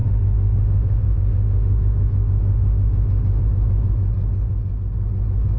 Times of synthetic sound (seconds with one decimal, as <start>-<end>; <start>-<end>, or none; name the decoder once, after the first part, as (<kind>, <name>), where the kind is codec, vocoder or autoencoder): 0.0-3.4 (autoencoder, DAC-VAE)